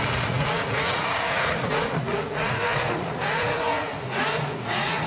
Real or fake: fake